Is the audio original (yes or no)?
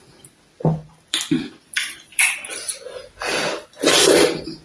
no